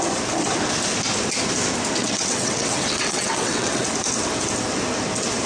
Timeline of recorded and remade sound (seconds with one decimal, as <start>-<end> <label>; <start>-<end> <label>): 0.0-2.0 recorded; 2.0-3.8 remade; 3.8-5.5 recorded